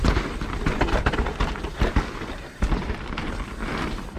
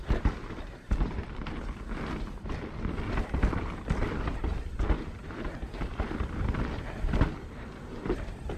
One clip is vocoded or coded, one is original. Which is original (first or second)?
first